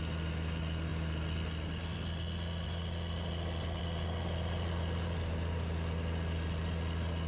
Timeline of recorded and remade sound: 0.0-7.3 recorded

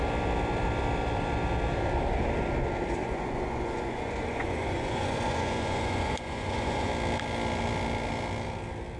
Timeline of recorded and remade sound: 0.0-3.0 recorded; 3.0-6.9 remade; 6.9-9.0 recorded

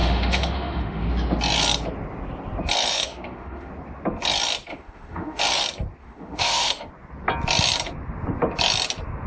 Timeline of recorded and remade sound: 0.0-1.1 remade; 1.1-2.9 recorded; 2.9-3.7 remade; 3.7-4.7 recorded; 4.7-5.4 remade; 5.4-6.0 recorded; 6.0-6.9 remade; 6.9-9.3 recorded

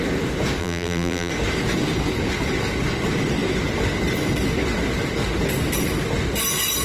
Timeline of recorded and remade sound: 0.0-0.6 recorded; 0.6-1.3 remade; 1.3-6.8 recorded

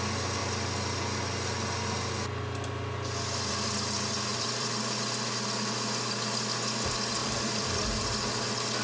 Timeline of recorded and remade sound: 0.0-4.3 recorded; 4.3-4.9 remade; 4.9-7.2 recorded; 7.2-7.8 remade; 7.8-8.8 recorded

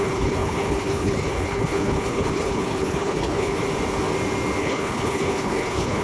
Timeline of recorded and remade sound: 0.0-3.6 remade; 3.6-4.6 recorded; 4.6-6.0 remade

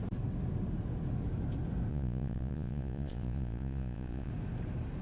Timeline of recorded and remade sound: 0.0-1.9 recorded; 1.9-4.3 remade; 4.3-5.0 recorded

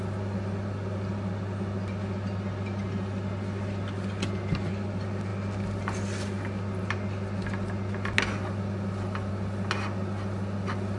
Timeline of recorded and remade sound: 0.0-11.0 recorded